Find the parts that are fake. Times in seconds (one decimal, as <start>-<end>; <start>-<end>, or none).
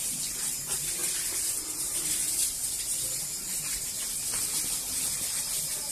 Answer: none